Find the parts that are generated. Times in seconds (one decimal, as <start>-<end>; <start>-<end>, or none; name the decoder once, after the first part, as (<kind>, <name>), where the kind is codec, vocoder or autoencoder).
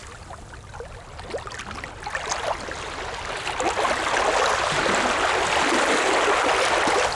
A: none